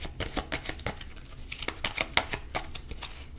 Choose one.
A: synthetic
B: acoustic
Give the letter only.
B